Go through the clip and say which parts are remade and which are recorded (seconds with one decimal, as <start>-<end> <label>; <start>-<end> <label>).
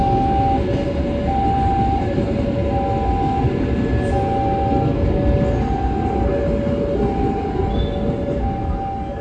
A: 0.0-9.2 recorded